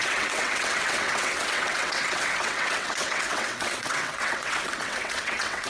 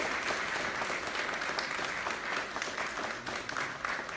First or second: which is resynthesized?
first